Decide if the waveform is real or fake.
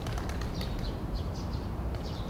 fake